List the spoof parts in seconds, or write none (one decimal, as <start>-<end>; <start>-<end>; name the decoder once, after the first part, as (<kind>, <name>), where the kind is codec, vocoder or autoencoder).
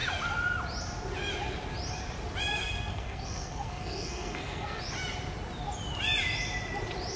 2.5-4.8 (codec, SNAC)